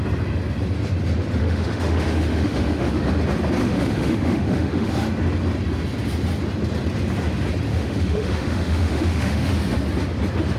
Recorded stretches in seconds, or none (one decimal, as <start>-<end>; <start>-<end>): 0.0-1.4; 3.1-3.6; 4.9-7.7; 9.5-10.6